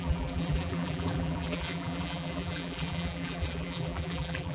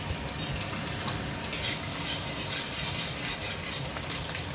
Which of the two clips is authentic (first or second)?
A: second